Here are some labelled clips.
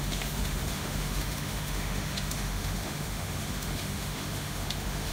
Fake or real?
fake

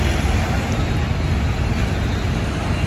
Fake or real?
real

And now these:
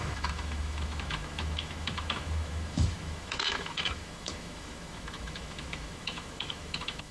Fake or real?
fake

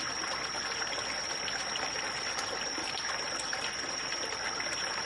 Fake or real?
real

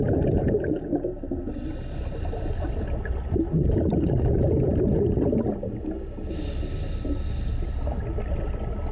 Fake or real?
real